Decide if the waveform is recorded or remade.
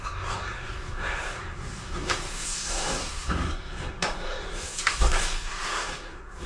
remade